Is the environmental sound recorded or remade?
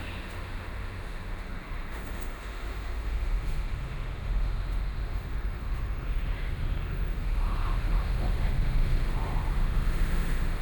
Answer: remade